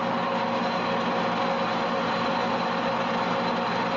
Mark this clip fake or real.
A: real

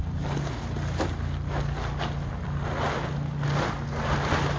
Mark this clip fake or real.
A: real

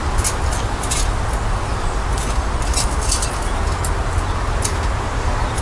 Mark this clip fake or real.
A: real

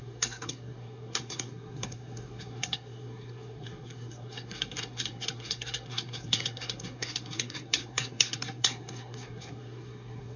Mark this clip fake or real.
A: fake